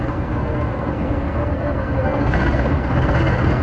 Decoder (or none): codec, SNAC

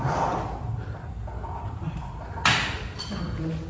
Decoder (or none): none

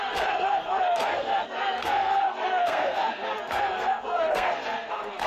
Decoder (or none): codec, SNAC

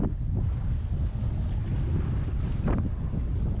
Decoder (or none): none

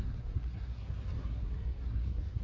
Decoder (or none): codec, SNAC